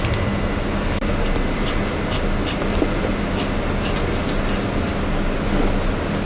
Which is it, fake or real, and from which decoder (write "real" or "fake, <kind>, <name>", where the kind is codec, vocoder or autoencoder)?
real